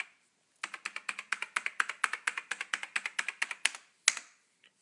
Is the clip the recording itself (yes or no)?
yes